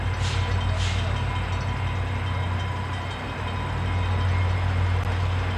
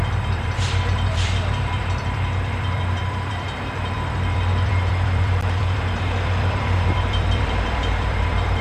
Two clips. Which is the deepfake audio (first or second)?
second